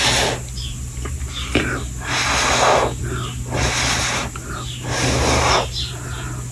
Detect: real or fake real